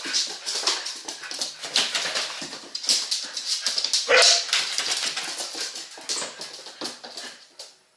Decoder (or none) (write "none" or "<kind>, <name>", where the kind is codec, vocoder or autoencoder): none